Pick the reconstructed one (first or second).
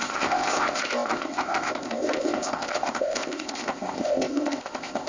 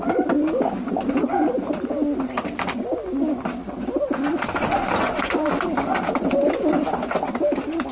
first